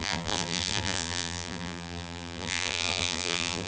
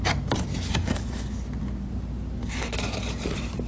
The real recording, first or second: second